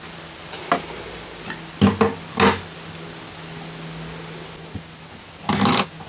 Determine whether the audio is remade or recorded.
recorded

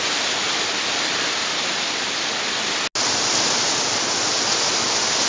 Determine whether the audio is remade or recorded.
recorded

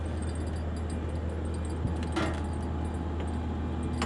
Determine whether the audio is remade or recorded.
recorded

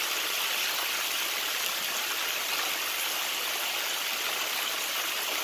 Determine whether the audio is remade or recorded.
remade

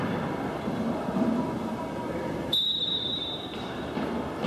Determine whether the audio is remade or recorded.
remade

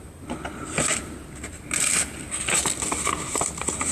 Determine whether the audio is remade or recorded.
recorded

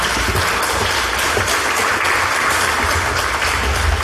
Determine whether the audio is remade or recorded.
recorded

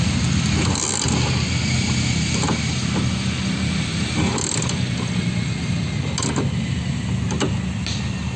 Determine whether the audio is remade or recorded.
recorded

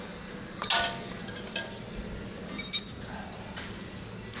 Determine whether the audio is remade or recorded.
recorded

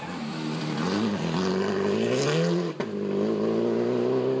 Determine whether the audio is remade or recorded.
recorded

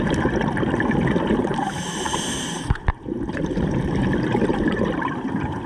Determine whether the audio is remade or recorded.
remade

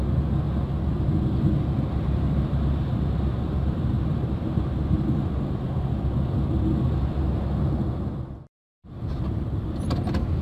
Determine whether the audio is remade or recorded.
recorded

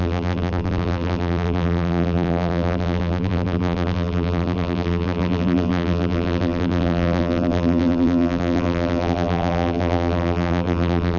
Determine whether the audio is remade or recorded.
remade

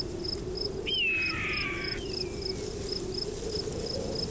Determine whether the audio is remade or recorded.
recorded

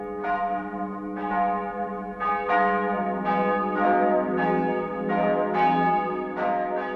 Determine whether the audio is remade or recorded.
recorded